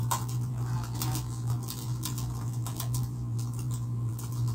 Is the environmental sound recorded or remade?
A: remade